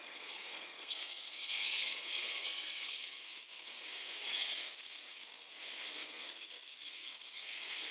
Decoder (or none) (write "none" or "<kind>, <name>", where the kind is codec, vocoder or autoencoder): codec, SNAC